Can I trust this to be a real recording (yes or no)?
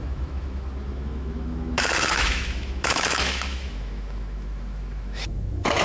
no